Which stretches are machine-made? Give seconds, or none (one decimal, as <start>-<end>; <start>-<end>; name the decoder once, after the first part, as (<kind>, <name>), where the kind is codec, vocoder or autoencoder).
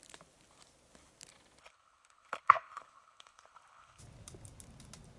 1.6-4.0 (codec, HILCodec)